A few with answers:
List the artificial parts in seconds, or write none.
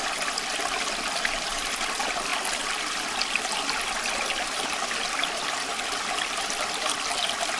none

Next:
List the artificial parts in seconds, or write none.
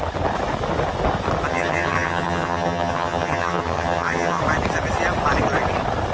1.5-4.4 (vocoder, HiFi-GAN)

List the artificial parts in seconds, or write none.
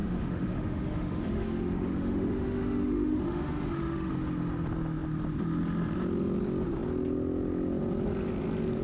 0.0-4.1 (autoencoder, DAC-VAE)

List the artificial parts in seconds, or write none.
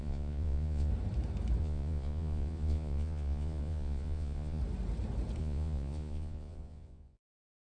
0.0-0.9 (vocoder, Vocos); 1.6-4.6; 5.4-7.7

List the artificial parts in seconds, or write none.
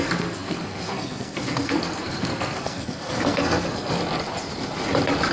0.0-4.0 (codec, SNAC)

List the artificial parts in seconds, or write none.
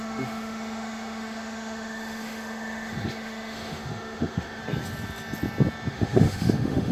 0.0-4.6 (autoencoder, DAC-VAE); 5.9-6.9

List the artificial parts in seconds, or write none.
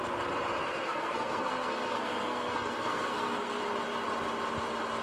0.6-3.6 (codec, SNAC)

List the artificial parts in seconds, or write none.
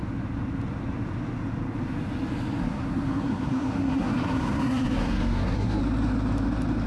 2.6-5.8 (codec, SNAC)